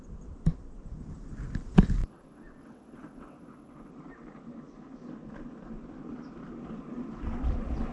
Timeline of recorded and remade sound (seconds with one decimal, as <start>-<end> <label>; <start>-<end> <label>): 0.0-2.0 recorded; 2.0-3.9 remade; 3.9-7.9 recorded